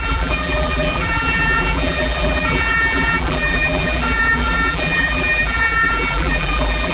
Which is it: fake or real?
fake